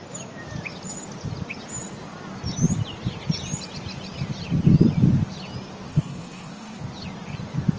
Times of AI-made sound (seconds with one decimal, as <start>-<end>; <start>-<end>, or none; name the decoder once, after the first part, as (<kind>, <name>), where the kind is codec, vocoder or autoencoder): 5.9-6.8 (codec, SNAC)